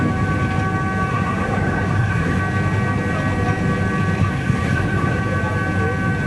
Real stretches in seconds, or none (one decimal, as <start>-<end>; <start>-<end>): 0.0-1.1; 2.4-4.2; 5.2-6.3